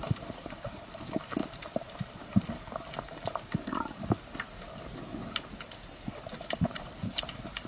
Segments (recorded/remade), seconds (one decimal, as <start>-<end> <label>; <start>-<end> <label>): 0.0-5.1 remade; 5.1-6.2 recorded; 6.2-7.7 remade